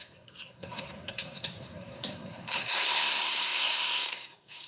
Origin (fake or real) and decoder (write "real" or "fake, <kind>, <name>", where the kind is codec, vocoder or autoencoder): fake, codec, SNAC